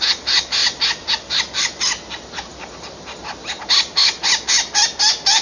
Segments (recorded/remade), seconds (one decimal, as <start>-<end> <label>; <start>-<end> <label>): 0.0-5.4 recorded